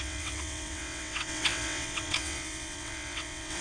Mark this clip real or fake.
fake